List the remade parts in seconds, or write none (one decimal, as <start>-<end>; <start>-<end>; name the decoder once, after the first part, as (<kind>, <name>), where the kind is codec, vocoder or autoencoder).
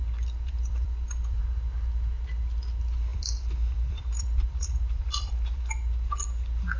0.5-1.4 (vocoder, BigVGAN v2); 3.1-5.7